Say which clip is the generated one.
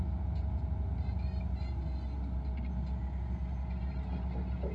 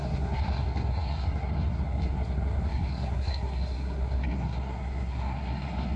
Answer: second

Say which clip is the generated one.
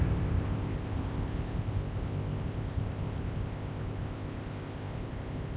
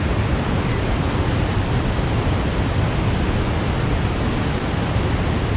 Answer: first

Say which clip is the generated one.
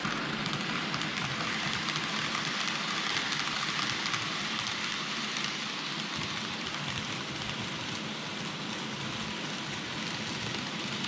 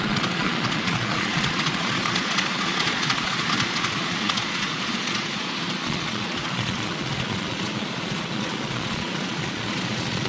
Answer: second